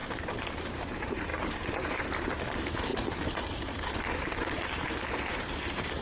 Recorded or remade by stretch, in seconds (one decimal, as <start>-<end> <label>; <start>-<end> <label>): 0.0-6.0 remade